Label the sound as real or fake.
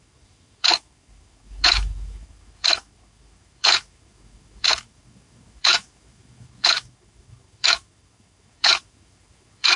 fake